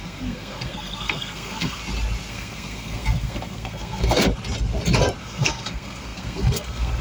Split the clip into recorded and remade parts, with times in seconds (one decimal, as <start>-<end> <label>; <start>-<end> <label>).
0.0-1.8 remade; 1.8-2.3 recorded; 2.3-4.2 remade; 4.2-5.2 recorded; 5.2-7.0 remade